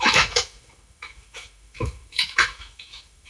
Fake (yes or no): yes